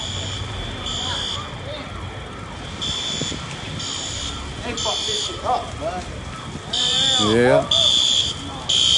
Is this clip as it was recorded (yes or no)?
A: yes